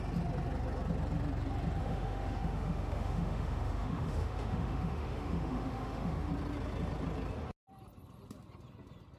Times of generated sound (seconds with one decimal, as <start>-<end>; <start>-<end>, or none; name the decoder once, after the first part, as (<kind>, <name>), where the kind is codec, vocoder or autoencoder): 1.8-6.3 (autoencoder, DAC-VAE)